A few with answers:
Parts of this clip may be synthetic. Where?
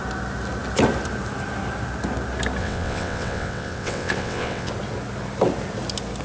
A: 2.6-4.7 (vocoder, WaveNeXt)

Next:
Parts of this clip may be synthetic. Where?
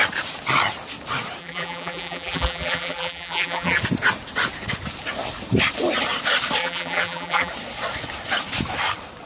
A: 1.4-3.8 (vocoder, BigVGAN v2); 6.6-7.5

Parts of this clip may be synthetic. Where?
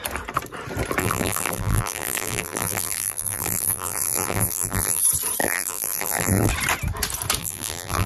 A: 1.0-5.0 (vocoder, BigVGAN v2); 5.4-6.5; 7.4-8.1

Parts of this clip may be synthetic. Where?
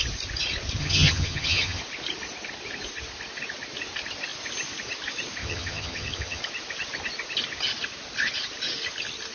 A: 0.8-1.8 (vocoder, HiFi-GAN); 5.4-6.4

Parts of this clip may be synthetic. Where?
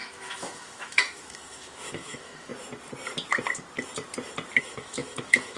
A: 0.0-2.5 (autoencoder, DAC-VAE); 4.6-5.6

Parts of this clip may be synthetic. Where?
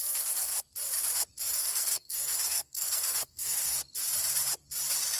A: 0.0-0.5 (codec, SNAC); 1.5-3.8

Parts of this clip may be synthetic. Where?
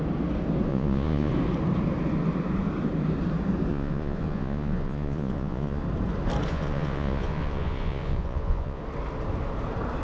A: 0.7-1.3 (vocoder, Vocos); 3.7-5.8; 6.5-8.8